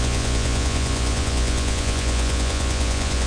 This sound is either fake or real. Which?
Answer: fake